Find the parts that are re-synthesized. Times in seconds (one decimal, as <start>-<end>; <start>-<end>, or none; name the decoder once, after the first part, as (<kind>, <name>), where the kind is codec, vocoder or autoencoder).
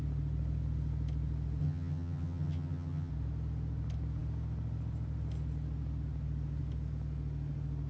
1.6-3.1 (vocoder, HiFi-GAN)